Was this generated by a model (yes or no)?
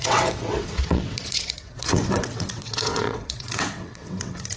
yes